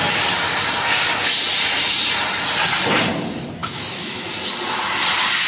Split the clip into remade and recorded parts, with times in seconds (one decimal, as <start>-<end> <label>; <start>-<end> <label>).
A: 0.0-3.6 recorded; 3.6-4.3 remade; 4.3-5.5 recorded

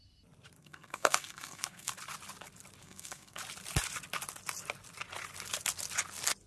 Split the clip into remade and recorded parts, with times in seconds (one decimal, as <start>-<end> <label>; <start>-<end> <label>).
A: 0.0-0.6 recorded; 0.6-1.9 remade; 1.9-2.8 recorded; 2.8-3.4 remade; 3.4-6.5 recorded

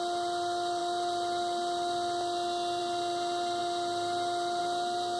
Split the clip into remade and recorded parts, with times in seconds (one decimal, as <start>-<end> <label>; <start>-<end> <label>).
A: 0.0-5.2 recorded

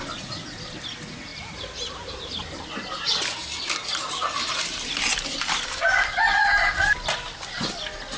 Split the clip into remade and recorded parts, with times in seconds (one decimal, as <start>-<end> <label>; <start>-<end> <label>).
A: 0.0-8.2 recorded